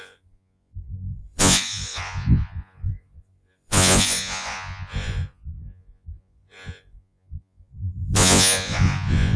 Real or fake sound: fake